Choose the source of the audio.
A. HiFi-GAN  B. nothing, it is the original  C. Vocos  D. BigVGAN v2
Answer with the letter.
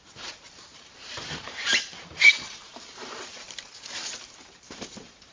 D